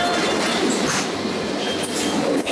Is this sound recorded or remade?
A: recorded